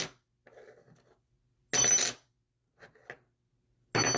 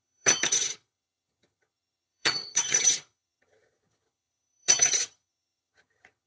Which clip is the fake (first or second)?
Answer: second